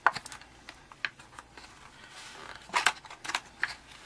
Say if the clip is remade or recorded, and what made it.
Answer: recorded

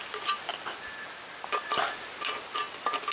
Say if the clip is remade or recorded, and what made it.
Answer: recorded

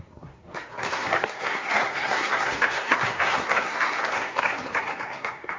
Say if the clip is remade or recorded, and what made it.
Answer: remade, codec, SNAC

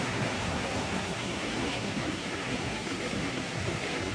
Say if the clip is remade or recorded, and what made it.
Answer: remade, codec, SNAC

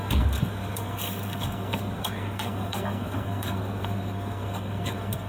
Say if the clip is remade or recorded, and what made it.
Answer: remade, codec, SNAC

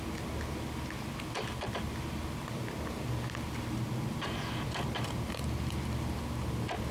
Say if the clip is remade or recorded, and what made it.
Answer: recorded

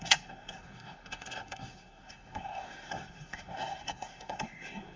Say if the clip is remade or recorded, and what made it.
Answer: remade, codec, SNAC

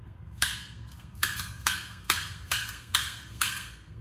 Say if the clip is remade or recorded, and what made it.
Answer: remade, codec, SNAC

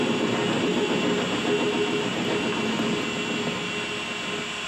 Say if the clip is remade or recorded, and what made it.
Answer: recorded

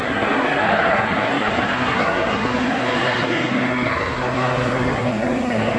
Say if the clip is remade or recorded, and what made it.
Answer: remade, codec, SNAC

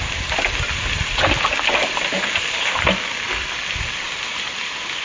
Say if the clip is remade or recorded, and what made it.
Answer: recorded